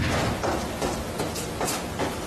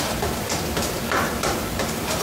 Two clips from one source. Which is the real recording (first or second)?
first